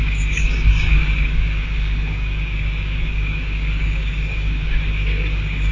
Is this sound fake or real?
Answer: fake